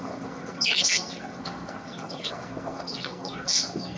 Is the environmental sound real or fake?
fake